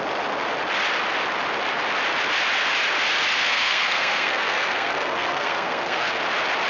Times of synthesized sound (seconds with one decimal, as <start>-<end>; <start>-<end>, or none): 3.3-6.2